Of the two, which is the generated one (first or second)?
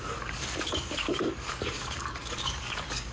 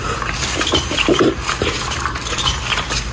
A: first